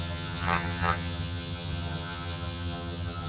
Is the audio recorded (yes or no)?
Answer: no